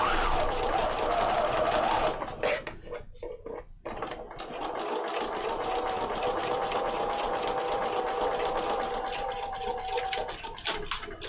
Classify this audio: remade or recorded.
recorded